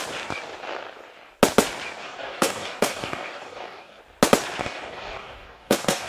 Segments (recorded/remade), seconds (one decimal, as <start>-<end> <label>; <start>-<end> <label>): 0.0-2.0 recorded; 2.0-4.0 remade; 4.0-4.6 recorded; 4.6-6.1 remade